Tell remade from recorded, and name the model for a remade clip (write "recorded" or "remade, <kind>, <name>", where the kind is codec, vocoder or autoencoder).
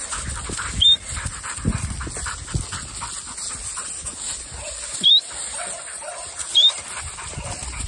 recorded